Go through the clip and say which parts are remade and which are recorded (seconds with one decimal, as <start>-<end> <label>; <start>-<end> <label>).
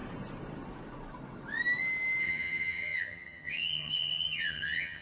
0.0-2.2 recorded; 2.2-5.0 remade